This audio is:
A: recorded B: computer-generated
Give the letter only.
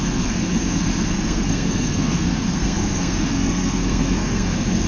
B